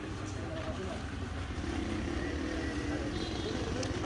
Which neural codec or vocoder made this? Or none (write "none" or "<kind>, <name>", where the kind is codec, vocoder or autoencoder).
none